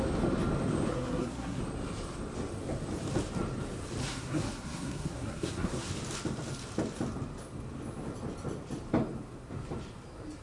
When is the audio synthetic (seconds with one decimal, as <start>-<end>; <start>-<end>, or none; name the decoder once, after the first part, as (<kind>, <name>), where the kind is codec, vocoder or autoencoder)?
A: 0.9-1.6 (codec, SNAC); 4.0-5.9